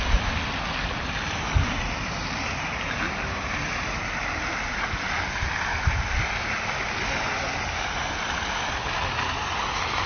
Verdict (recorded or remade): recorded